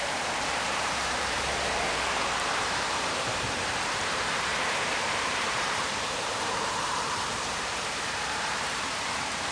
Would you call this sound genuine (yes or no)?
no